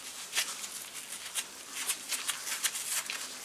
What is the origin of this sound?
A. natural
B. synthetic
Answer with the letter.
A